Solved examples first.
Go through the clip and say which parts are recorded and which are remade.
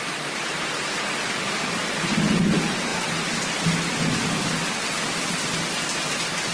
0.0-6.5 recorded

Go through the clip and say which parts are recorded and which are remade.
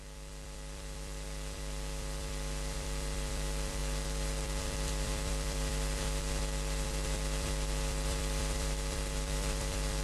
0.0-10.0 remade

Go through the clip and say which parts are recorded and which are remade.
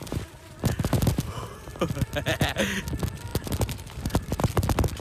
0.0-1.7 recorded; 1.7-2.8 remade; 2.8-3.3 recorded; 3.3-4.4 remade; 4.4-5.0 recorded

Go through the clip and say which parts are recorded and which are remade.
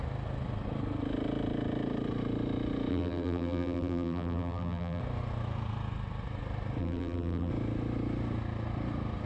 0.0-2.9 recorded; 2.9-5.0 remade; 5.0-6.8 recorded; 6.8-7.5 remade; 7.5-9.3 recorded